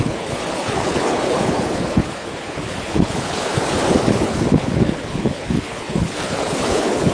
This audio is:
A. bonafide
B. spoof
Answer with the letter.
B